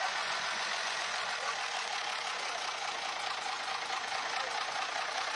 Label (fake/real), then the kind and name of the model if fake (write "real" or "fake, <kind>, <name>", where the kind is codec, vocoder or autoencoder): fake, vocoder, Vocos